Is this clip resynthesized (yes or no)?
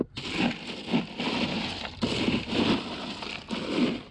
no